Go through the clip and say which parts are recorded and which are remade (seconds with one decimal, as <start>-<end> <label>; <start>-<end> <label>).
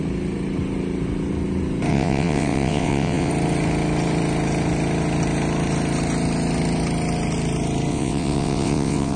0.0-1.9 recorded; 1.9-3.3 remade; 3.3-7.9 recorded; 7.9-9.2 remade